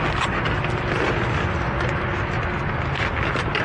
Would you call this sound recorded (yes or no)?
yes